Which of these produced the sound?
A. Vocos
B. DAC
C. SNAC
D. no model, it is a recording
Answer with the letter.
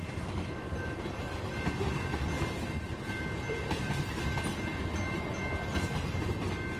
D